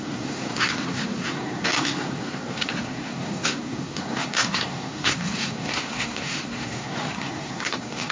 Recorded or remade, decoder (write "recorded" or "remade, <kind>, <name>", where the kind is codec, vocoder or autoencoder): remade, codec, SNAC